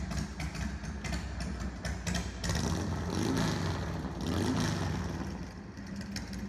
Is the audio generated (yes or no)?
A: no